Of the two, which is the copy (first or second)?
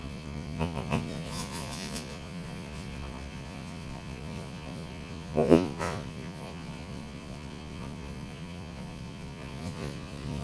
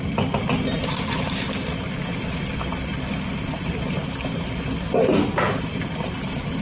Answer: first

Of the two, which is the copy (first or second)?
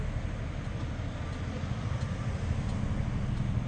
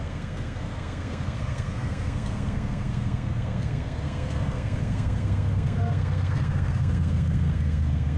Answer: second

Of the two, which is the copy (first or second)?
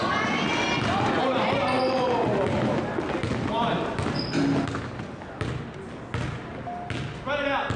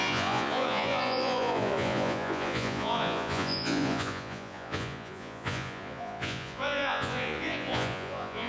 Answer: second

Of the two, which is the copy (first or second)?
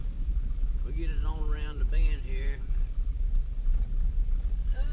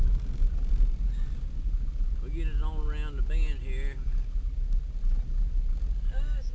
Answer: first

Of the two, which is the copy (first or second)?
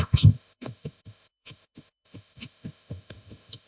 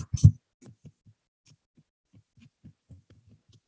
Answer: first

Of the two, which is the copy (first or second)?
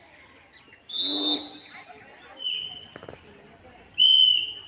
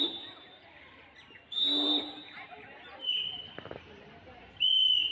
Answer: second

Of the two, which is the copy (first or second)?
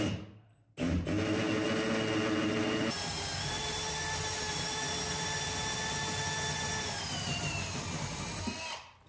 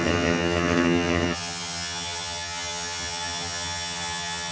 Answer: second